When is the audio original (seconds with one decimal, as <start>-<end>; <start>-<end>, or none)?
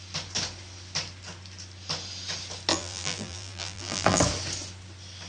0.0-2.7; 4.2-5.3